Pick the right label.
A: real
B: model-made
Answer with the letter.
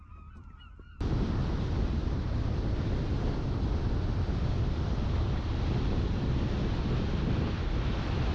B